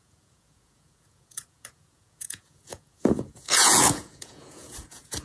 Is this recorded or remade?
remade